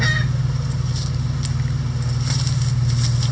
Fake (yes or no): no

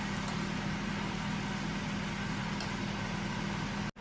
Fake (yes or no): no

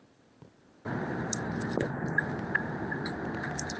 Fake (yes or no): yes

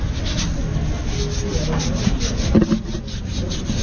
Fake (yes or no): no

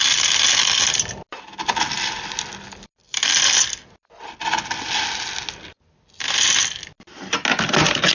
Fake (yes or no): no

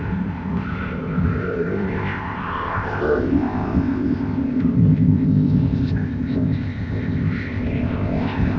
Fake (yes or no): yes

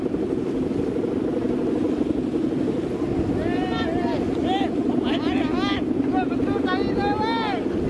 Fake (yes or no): no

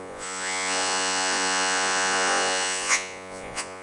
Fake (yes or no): yes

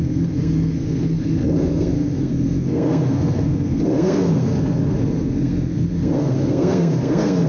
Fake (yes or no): yes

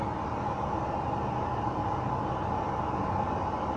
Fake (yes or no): no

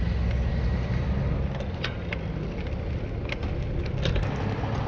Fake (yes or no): no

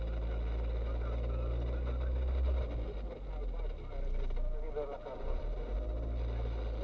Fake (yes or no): no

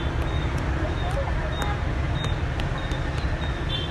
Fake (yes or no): no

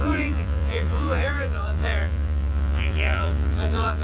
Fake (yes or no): yes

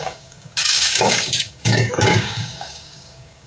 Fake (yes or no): yes